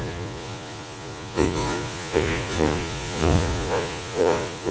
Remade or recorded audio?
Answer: remade